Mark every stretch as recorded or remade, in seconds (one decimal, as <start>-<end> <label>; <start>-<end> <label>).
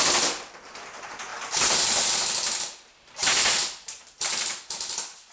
0.0-5.3 recorded